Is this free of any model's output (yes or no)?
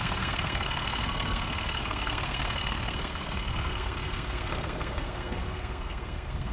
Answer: no